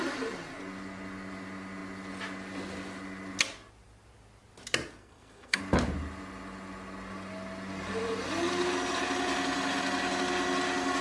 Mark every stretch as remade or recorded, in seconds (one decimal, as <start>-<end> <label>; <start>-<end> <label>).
0.0-5.0 recorded; 5.0-5.6 remade; 5.6-11.0 recorded